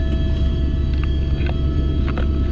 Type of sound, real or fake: real